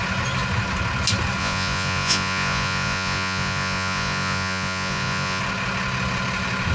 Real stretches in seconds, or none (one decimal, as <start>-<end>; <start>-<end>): 0.0-1.4; 5.4-6.7